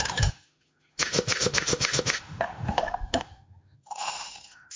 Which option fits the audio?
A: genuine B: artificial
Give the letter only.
B